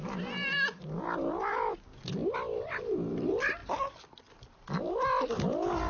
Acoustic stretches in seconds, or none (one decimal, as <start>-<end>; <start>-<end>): 0.0-5.9